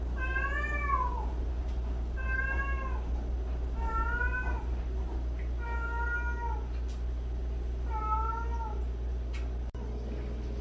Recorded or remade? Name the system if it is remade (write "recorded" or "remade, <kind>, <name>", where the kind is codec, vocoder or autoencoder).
recorded